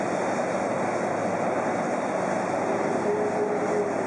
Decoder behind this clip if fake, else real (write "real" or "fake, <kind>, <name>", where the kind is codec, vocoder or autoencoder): real